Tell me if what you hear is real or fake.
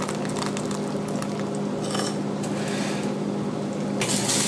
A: real